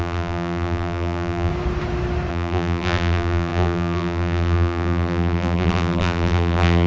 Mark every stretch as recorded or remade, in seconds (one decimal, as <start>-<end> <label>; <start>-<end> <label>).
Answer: 0.0-1.5 remade; 1.5-2.3 recorded; 2.3-6.9 remade